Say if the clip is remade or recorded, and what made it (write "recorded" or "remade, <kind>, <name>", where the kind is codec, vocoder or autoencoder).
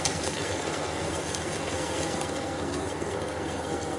remade, codec, SNAC